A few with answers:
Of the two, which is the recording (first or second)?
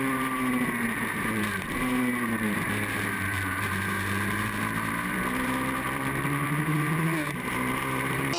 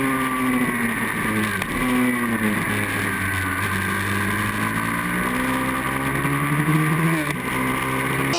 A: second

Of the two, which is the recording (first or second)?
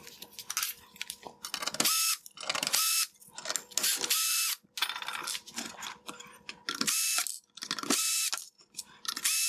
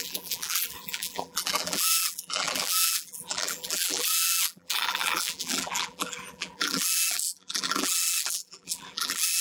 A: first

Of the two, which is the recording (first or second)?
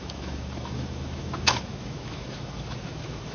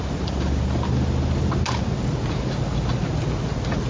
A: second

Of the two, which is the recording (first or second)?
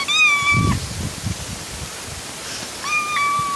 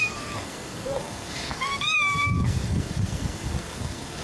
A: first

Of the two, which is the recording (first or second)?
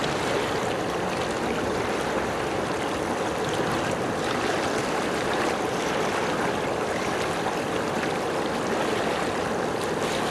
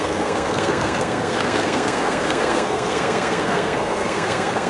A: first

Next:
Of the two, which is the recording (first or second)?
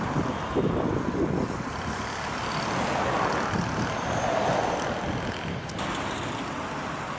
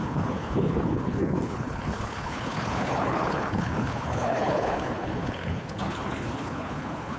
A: first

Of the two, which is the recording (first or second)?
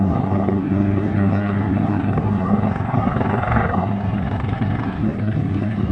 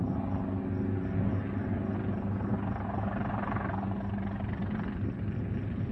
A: second